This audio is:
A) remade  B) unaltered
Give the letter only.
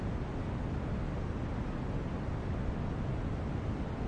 B